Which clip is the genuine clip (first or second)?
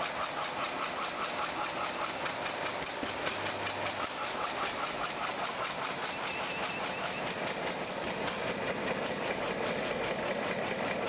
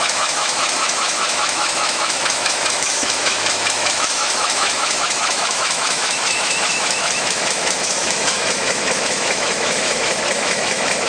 first